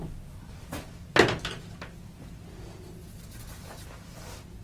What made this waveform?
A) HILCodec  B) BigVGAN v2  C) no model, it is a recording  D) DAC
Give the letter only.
C